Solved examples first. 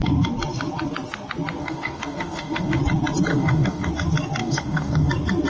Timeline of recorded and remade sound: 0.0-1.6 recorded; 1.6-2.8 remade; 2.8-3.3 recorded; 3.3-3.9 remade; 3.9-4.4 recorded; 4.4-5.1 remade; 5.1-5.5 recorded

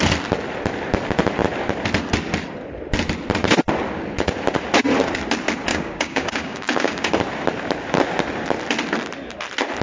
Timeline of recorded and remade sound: 0.0-5.7 recorded; 5.7-7.1 remade; 7.1-9.8 recorded

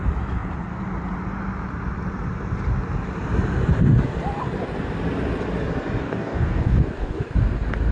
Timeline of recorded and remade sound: 0.0-6.0 recorded; 6.0-7.3 remade; 7.3-7.9 recorded

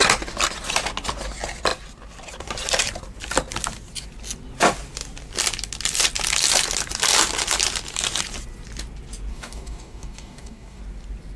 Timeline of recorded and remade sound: 0.0-9.3 recorded; 9.3-10.8 remade; 10.8-11.4 recorded